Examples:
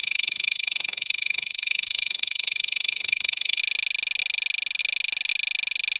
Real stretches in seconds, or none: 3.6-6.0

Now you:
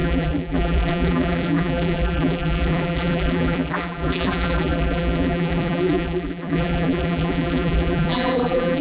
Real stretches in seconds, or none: none

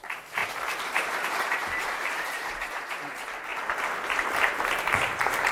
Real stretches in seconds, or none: 3.5-4.5

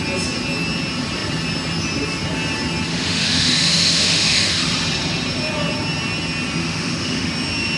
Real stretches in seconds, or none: 0.0-2.9; 4.6-6.6; 7.3-7.8

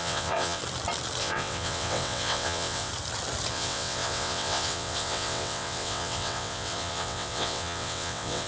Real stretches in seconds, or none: 0.6-1.2; 2.9-3.5

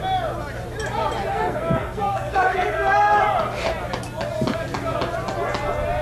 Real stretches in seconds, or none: 0.0-1.3; 3.2-6.0

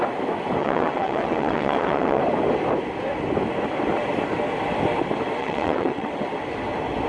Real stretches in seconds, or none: 0.0-0.6; 2.2-5.4; 6.1-7.1

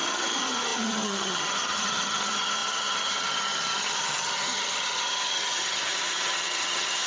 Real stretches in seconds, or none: none